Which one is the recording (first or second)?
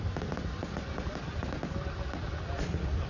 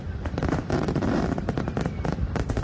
first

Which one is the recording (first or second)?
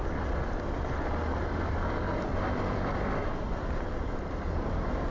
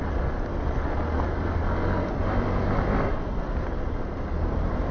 second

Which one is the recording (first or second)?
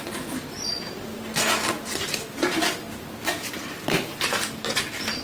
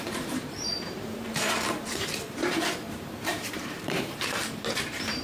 first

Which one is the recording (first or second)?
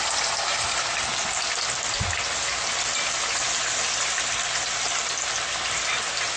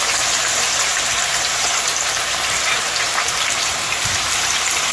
first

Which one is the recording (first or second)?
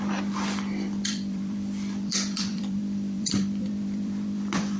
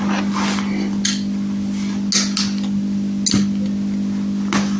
second